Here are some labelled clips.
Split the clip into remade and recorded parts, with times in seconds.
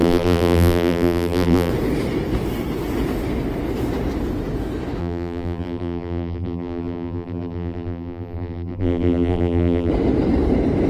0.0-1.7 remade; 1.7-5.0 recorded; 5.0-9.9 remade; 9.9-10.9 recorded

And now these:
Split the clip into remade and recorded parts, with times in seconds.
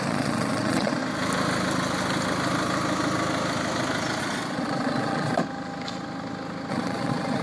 0.0-1.0 remade; 1.0-4.2 recorded; 4.2-5.4 remade; 5.4-6.7 recorded; 6.7-7.4 remade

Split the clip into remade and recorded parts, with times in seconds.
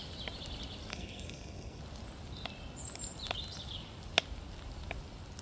0.0-0.9 recorded; 0.9-1.8 remade; 1.8-5.4 recorded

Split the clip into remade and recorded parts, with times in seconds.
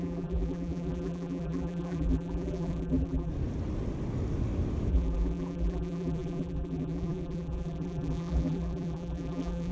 0.0-3.3 remade; 3.3-4.9 recorded; 4.9-9.7 remade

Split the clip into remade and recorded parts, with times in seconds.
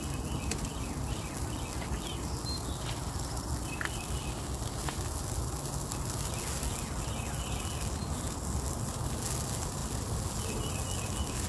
0.0-11.5 recorded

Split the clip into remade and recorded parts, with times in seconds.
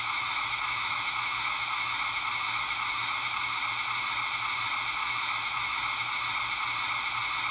0.0-3.6 remade; 3.6-5.0 recorded; 5.0-6.1 remade; 6.1-7.5 recorded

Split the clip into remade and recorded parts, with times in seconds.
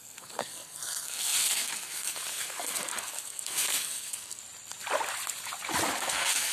0.0-4.4 remade; 4.4-6.0 recorded; 6.0-6.5 remade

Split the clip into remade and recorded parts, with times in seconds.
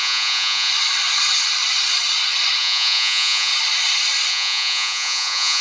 0.0-0.7 remade; 0.7-2.6 recorded; 2.6-3.5 remade; 3.5-4.3 recorded; 4.3-5.6 remade